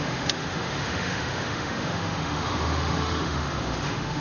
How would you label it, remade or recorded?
remade